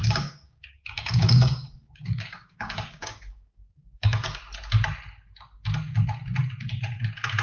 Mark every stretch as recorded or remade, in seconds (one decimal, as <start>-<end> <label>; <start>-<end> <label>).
0.0-4.4 remade; 4.4-7.4 recorded